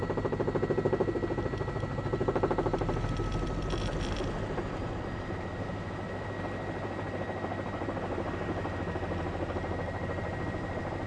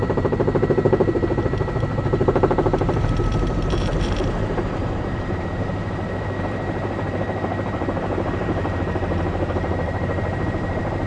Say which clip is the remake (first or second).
second